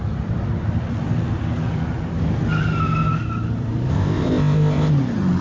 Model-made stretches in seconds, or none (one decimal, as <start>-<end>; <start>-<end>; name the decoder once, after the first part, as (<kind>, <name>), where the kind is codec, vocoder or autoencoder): 3.9-4.9 (codec, ZipCodec)